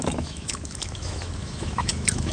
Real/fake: fake